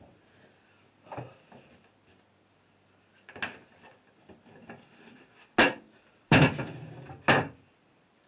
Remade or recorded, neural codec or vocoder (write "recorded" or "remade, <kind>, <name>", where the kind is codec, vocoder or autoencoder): recorded